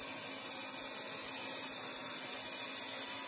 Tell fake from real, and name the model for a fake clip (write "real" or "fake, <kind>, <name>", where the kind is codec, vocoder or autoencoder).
real